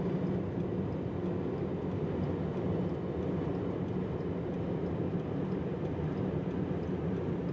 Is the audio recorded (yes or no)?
yes